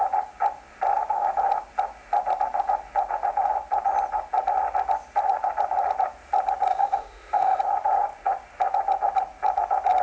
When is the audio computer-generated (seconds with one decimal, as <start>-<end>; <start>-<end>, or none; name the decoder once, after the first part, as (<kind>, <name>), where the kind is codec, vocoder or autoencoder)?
6.7-7.6 (autoencoder, DAC-VAE)